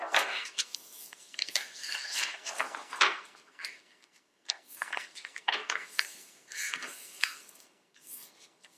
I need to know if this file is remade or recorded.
remade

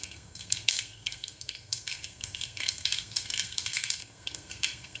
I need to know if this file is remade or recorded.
remade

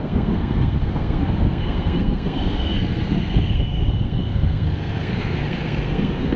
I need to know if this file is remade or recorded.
remade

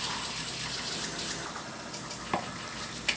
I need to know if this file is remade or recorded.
recorded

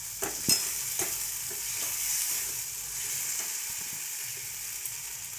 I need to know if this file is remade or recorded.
recorded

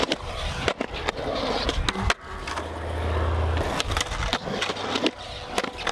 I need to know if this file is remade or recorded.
recorded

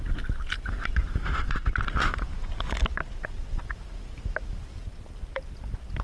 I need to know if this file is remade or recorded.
recorded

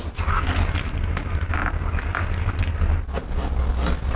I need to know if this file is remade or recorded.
recorded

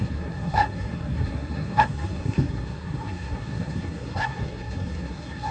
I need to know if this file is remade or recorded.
remade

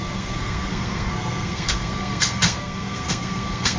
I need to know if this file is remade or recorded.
remade